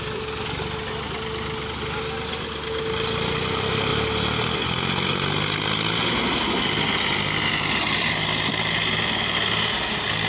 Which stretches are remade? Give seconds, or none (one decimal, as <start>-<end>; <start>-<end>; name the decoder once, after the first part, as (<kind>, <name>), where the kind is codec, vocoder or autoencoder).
none